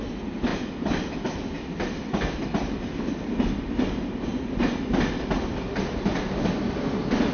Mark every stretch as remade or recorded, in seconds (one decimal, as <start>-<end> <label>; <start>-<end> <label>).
0.0-7.3 recorded